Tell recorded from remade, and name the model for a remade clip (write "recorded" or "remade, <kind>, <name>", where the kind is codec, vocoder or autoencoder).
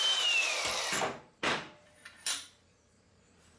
remade, vocoder, BigVGAN v2